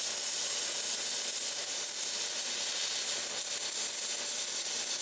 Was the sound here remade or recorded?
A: recorded